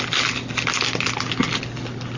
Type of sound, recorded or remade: recorded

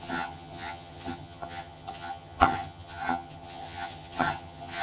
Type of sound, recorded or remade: remade